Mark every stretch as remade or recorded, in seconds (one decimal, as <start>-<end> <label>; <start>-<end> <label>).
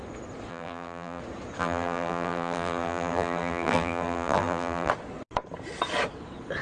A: 0.0-0.5 recorded; 0.5-1.2 remade; 1.2-1.6 recorded; 1.6-4.9 remade; 4.9-6.6 recorded